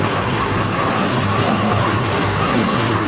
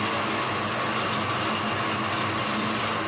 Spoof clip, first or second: first